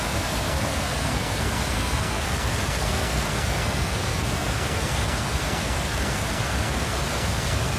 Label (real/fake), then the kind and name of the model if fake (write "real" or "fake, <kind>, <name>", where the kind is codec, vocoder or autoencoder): fake, codec, SNAC